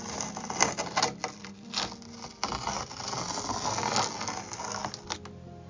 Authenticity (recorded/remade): recorded